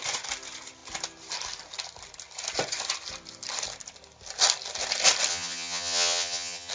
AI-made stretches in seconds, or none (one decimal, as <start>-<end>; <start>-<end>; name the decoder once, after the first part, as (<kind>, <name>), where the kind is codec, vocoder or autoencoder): 5.3-6.7 (vocoder, HiFi-GAN)